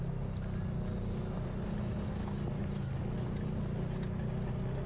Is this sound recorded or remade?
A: recorded